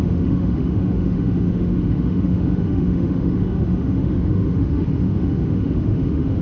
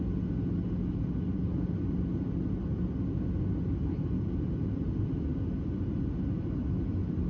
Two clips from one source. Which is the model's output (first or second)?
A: first